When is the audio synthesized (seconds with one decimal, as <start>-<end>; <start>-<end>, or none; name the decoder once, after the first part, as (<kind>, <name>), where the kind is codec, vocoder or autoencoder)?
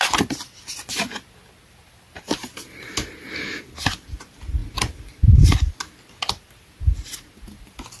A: none